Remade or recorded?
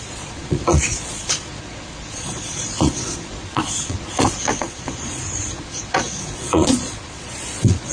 remade